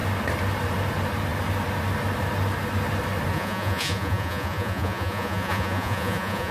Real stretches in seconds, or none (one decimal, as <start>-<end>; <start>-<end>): 0.0-3.3